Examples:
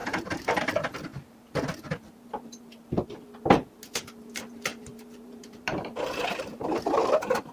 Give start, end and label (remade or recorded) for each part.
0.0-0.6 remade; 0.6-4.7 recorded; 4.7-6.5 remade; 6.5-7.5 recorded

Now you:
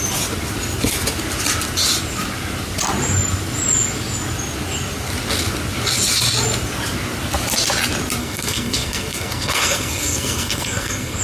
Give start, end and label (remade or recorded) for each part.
0.0-8.2 recorded; 8.2-11.2 remade

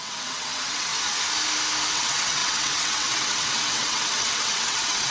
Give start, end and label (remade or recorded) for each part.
0.0-0.9 remade; 0.9-1.9 recorded; 1.9-5.1 remade

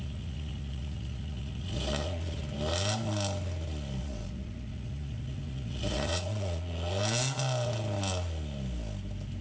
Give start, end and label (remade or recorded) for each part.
0.0-2.4 remade; 2.4-4.0 recorded; 4.0-7.0 remade; 7.0-9.4 recorded